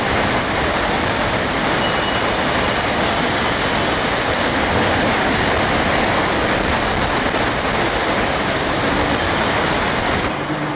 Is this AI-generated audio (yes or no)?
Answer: no